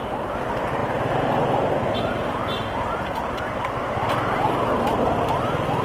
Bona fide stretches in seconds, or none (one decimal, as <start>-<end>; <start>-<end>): 0.0-5.8

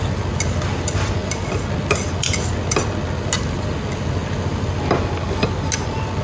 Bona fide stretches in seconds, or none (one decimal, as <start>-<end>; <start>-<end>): 0.0-6.2

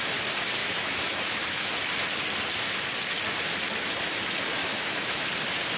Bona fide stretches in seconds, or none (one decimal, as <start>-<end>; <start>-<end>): 0.0-0.6; 1.8-4.6; 5.3-5.8

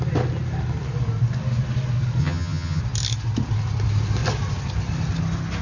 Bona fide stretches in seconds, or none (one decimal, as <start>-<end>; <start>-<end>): 0.0-2.2; 2.8-5.6